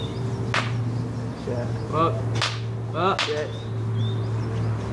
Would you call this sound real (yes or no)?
yes